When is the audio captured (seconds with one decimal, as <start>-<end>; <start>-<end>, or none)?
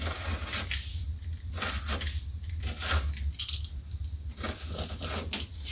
0.0-5.7